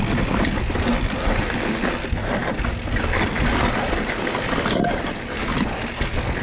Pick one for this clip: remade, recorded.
recorded